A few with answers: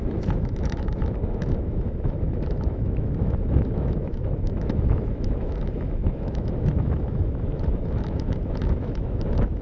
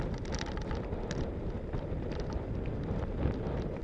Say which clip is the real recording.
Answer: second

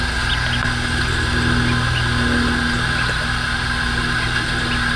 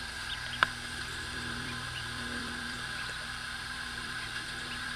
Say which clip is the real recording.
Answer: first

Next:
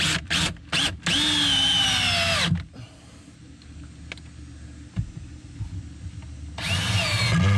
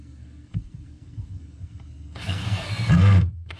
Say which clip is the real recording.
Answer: first